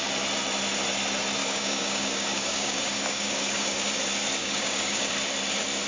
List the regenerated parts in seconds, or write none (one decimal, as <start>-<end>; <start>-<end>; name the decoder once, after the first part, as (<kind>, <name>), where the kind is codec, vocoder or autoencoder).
1.4-3.9 (codec, DAC); 4.4-5.1